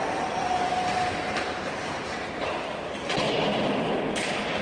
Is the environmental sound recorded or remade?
recorded